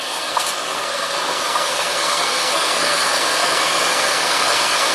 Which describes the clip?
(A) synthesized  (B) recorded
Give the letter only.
A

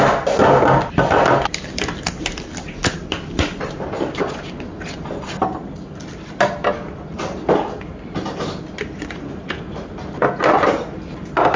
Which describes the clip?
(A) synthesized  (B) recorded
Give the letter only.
B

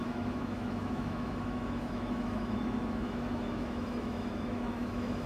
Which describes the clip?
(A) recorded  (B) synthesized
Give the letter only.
B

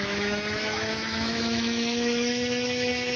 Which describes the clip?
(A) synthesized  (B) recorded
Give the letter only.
A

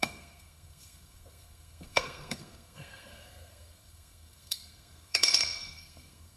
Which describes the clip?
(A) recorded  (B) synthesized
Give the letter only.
B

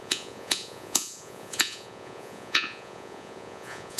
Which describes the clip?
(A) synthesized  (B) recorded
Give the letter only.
A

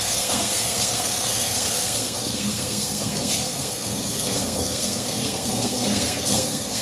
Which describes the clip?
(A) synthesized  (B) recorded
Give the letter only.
A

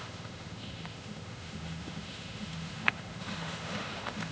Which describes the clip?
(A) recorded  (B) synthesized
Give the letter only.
B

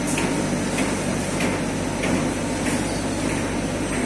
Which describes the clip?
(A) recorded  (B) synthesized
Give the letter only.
A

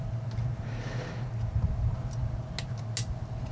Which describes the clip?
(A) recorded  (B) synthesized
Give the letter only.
A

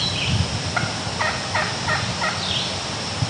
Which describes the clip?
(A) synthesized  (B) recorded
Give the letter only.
B